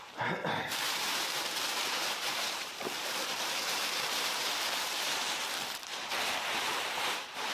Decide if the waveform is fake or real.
fake